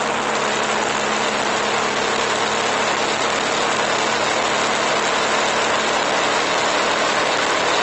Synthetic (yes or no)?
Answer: no